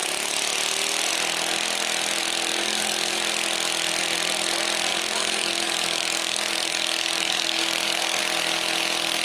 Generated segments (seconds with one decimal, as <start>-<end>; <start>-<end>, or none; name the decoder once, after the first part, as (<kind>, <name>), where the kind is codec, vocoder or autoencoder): 2.5-3.2 (codec, DAC); 4.9-8.2